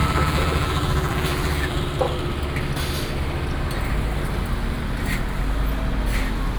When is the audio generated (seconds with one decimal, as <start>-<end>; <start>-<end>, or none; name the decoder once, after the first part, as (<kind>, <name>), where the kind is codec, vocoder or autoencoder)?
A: 0.0-1.8 (vocoder, BigVGAN v2)